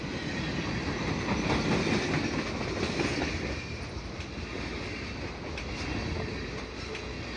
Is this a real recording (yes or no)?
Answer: yes